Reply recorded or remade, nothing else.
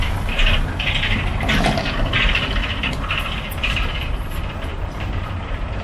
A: remade